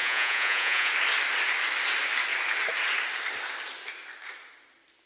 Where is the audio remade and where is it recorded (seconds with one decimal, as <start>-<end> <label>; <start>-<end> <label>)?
0.0-0.9 remade; 0.9-5.1 recorded

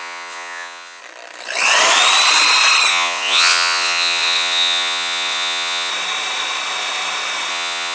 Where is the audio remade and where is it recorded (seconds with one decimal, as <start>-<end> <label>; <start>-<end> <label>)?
0.0-1.0 remade; 1.0-2.9 recorded; 2.9-5.9 remade; 5.9-7.5 recorded; 7.5-7.9 remade

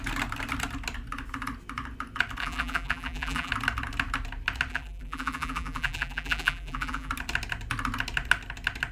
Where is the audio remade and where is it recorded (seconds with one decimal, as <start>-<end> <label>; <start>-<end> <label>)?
0.0-2.4 recorded; 2.4-3.5 remade; 3.5-4.7 recorded; 4.7-7.1 remade; 7.1-8.9 recorded

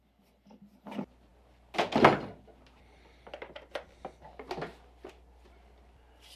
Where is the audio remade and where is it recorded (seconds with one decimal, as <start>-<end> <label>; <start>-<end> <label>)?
0.0-6.4 recorded

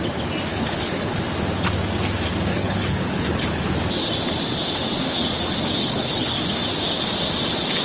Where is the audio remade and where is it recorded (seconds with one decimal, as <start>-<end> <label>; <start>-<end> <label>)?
0.0-0.5 recorded; 0.5-1.2 remade; 1.2-2.5 recorded; 2.5-3.7 remade; 3.7-5.8 recorded; 5.8-6.4 remade; 6.4-7.8 recorded

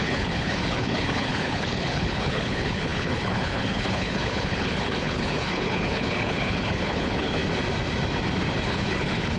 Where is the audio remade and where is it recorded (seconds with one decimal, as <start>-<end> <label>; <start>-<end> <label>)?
0.0-7.4 remade; 7.4-8.7 recorded; 8.7-9.4 remade

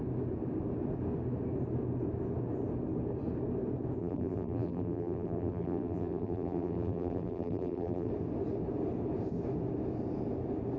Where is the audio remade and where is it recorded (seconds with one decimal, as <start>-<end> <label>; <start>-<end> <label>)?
0.0-4.0 recorded; 4.0-8.1 remade; 8.1-10.8 recorded

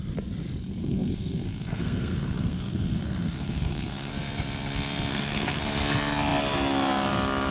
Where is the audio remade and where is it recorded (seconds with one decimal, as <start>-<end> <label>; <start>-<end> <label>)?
0.0-0.8 recorded; 0.8-4.1 remade; 4.1-5.1 recorded; 5.1-5.6 remade; 5.6-7.5 recorded